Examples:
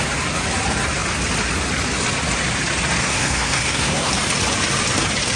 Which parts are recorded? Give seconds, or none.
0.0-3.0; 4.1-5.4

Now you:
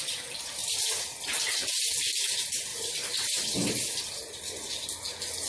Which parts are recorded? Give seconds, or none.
0.0-5.5

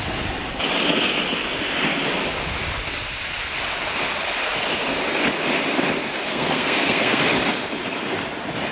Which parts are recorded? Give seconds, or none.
0.0-6.3; 7.2-8.7

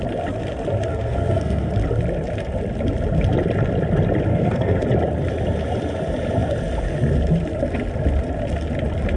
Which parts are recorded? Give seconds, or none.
0.0-0.9; 1.7-4.3; 4.8-9.2

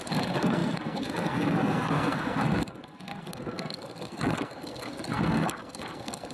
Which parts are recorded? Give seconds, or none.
none

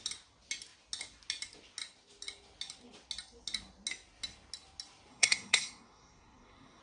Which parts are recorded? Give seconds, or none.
0.0-5.1

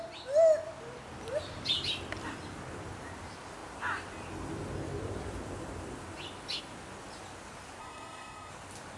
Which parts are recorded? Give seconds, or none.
0.0-7.8; 8.5-9.0

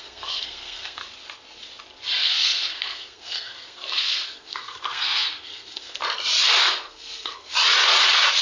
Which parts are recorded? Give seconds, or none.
1.0-2.2; 6.0-6.6; 7.5-8.4